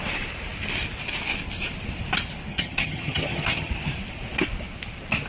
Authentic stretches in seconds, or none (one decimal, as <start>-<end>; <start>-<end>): 0.0-2.5; 3.7-5.3